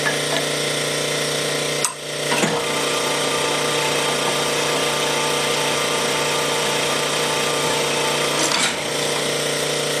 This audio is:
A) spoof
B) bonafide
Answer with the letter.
B